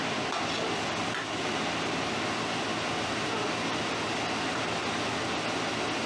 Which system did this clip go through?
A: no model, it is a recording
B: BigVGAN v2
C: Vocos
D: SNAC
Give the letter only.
A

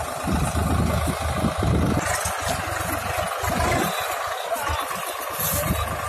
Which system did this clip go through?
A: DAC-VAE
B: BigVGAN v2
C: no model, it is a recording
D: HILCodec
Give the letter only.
C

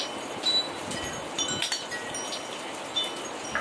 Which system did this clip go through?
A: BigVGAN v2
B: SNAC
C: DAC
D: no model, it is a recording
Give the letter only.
D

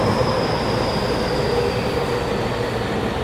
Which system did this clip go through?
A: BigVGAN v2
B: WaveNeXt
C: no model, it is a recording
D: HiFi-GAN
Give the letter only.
C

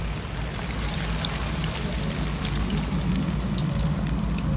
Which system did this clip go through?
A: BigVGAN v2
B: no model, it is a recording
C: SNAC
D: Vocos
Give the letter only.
B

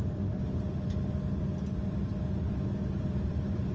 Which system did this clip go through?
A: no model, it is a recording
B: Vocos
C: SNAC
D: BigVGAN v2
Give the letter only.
D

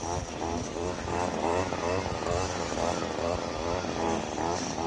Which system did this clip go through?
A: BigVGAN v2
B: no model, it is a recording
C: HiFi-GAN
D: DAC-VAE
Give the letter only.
B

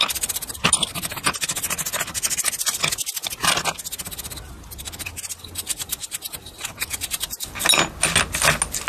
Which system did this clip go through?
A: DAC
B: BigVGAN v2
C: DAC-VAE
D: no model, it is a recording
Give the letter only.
D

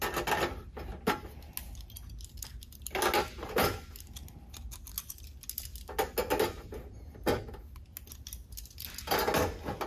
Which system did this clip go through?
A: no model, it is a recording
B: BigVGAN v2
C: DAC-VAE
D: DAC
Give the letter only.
A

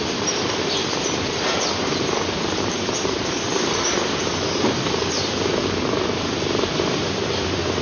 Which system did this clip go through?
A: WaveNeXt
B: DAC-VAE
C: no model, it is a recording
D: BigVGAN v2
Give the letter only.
D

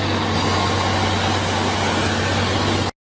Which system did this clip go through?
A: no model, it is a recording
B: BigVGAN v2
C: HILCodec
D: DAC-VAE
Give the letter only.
A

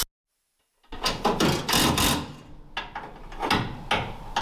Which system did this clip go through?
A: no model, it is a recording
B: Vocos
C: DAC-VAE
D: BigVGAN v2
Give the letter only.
A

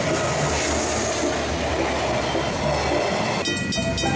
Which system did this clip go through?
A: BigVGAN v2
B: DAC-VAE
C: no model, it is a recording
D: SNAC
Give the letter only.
C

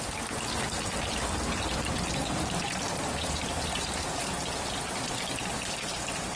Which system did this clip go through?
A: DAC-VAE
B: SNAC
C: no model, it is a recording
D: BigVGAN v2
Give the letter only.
D